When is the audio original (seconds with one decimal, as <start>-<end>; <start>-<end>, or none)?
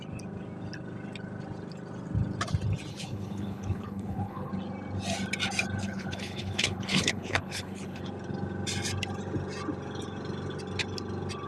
0.0-2.9; 4.5-5.8; 8.0-11.5